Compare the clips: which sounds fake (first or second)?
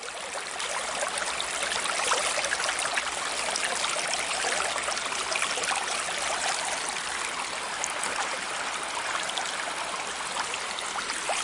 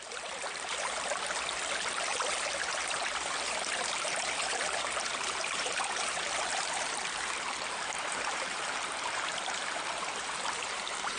second